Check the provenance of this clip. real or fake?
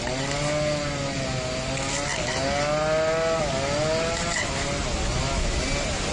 real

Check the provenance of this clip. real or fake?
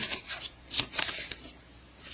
fake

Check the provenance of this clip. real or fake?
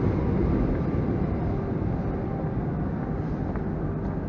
real